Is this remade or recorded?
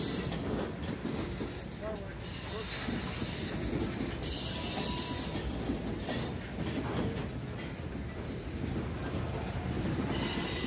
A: recorded